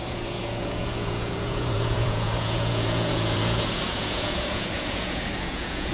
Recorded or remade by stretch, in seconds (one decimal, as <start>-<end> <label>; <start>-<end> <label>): 0.0-5.9 remade